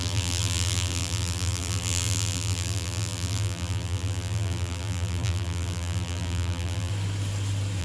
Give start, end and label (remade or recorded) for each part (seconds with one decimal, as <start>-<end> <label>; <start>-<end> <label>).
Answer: 0.0-6.9 remade; 6.9-7.8 recorded